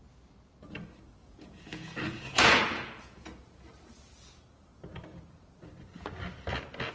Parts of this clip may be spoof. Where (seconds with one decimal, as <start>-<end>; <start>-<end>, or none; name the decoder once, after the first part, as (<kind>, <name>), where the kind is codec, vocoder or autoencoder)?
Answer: 1.2-3.7 (vocoder, Vocos)